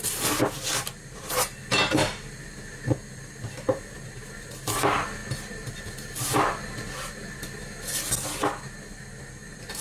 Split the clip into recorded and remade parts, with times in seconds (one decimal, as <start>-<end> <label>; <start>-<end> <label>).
0.0-9.8 recorded